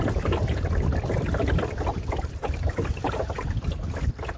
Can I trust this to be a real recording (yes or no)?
yes